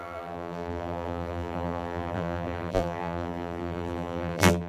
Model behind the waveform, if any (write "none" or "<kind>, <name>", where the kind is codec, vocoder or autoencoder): vocoder, BigVGAN v2